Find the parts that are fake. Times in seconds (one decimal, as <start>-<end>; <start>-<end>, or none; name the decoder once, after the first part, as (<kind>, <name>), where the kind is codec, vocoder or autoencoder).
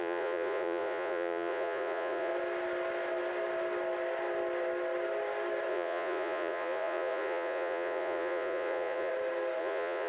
0.0-2.3 (vocoder, Vocos); 5.7-9.1; 9.6-10.1